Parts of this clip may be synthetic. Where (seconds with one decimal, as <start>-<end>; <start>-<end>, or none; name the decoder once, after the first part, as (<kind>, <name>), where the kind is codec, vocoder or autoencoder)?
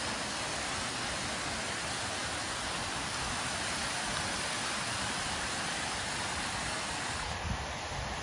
none